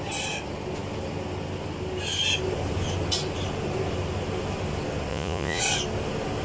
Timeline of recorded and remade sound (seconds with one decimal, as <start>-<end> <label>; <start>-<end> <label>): 0.0-5.1 recorded; 5.1-5.6 remade; 5.6-6.4 recorded